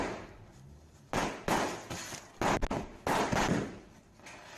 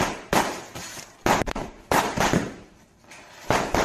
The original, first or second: first